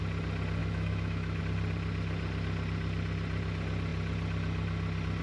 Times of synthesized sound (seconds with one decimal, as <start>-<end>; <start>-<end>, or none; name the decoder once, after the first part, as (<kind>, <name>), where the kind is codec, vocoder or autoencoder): 0.6-1.4 (autoencoder, DAC-VAE)